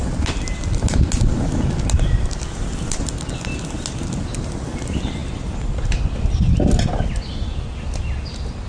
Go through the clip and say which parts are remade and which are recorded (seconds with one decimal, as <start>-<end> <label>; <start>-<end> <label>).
0.0-8.7 recorded